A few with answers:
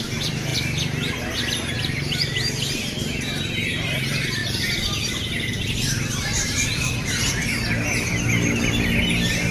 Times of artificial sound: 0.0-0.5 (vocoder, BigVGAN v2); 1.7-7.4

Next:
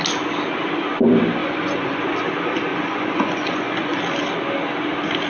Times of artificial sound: 1.4-2.0 (vocoder, Vocos); 2.7-4.0

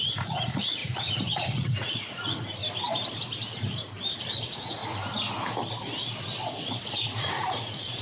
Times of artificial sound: 0.0-2.6 (vocoder, Vocos); 4.2-4.8; 7.2-8.0